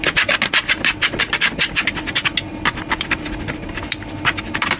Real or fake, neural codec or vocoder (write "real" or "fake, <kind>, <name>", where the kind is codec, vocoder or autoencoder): real